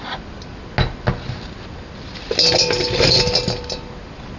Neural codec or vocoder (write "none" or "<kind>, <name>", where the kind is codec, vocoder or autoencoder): none